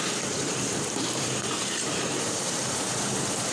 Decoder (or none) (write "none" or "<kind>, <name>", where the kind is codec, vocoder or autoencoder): vocoder, BigVGAN v2